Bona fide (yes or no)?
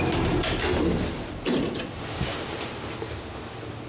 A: yes